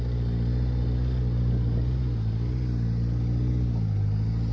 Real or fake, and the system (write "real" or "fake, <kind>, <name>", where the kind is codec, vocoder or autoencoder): real